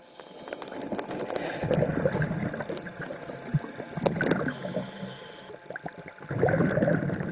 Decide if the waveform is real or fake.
real